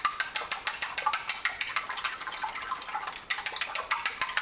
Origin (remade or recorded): recorded